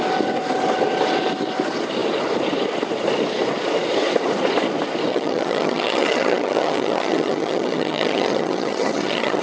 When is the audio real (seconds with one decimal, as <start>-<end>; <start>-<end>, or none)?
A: 0.0-5.1